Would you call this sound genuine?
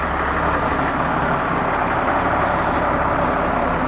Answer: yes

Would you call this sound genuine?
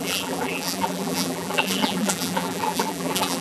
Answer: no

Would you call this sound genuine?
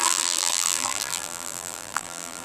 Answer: no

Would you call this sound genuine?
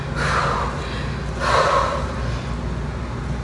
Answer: yes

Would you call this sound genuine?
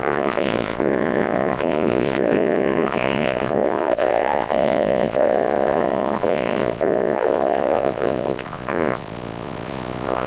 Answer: no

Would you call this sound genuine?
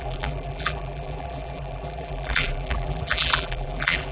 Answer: no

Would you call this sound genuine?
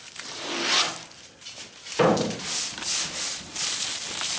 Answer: yes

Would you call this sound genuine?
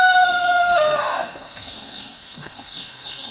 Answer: no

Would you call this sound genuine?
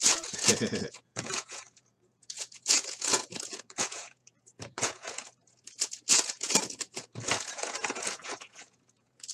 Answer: no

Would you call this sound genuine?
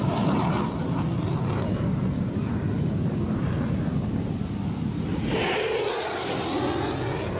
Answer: yes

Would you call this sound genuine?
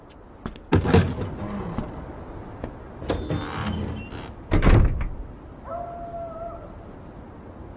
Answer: yes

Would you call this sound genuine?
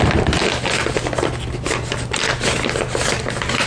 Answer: yes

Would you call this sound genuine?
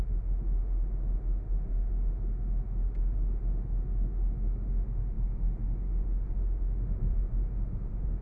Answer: no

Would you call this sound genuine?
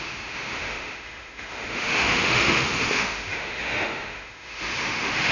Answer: no